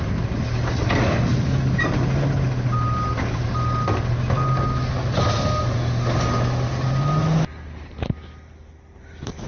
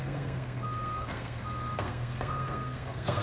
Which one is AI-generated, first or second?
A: second